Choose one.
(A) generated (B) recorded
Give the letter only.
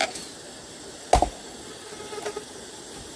B